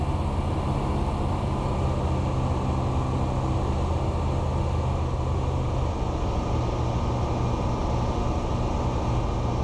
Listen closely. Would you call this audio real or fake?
real